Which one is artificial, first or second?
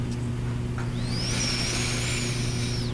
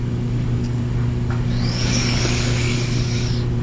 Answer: second